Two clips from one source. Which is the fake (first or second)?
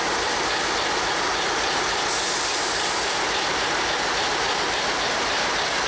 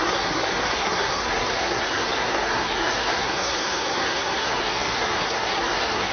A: second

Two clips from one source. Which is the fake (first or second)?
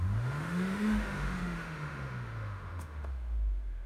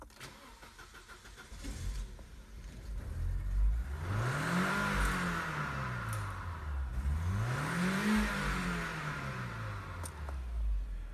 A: first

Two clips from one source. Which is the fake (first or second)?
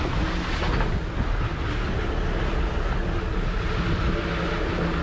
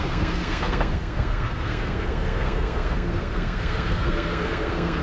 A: second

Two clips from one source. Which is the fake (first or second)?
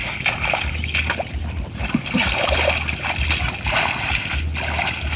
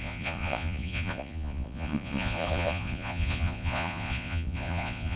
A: second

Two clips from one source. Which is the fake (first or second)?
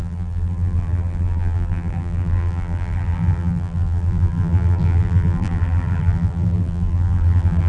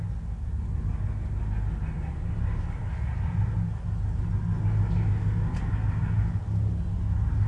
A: first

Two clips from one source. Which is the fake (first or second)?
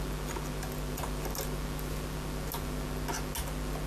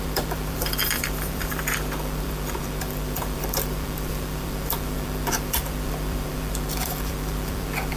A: second